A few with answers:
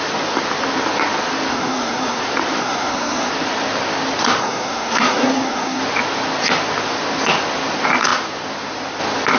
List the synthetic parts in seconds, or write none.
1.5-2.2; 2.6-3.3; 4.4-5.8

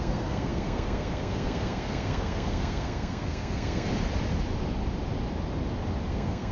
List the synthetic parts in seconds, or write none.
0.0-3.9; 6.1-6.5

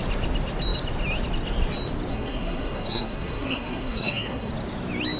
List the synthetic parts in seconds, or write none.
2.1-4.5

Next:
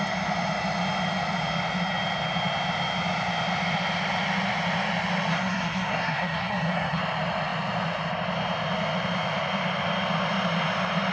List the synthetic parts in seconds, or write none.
5.3-7.0